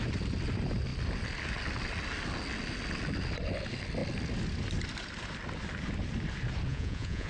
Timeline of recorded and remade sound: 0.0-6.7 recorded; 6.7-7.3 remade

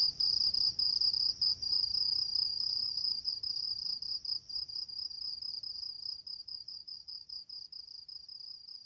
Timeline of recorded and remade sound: 0.0-2.5 recorded; 2.5-3.3 remade; 3.3-6.4 recorded; 6.4-7.3 remade; 7.3-8.9 recorded

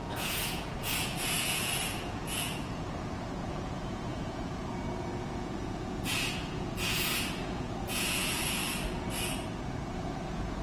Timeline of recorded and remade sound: 0.0-8.6 remade; 8.6-9.9 recorded; 9.9-10.6 remade

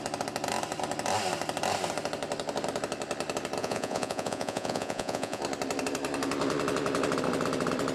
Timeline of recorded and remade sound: 0.0-3.6 recorded; 3.6-5.4 remade; 5.4-7.9 recorded

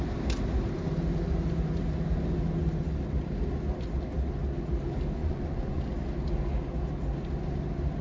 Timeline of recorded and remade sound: 0.0-5.2 recorded; 5.2-5.8 remade; 5.8-8.0 recorded

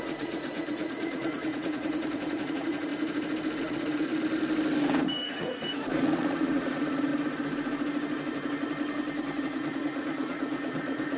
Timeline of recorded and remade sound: 0.0-2.9 remade; 2.9-3.6 recorded; 3.6-4.1 remade; 4.1-4.8 recorded; 4.8-7.1 remade; 7.1-9.4 recorded; 9.4-11.2 remade